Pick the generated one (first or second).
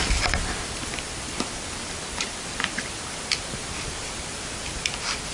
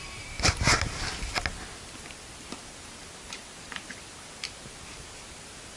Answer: first